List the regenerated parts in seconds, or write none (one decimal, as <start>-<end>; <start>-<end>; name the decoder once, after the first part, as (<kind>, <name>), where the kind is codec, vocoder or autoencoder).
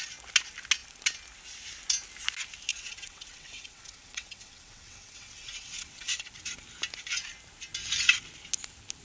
2.7-6.3 (vocoder, WaveNeXt)